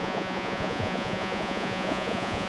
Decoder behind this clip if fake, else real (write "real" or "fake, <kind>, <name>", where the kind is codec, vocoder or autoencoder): fake, vocoder, Vocos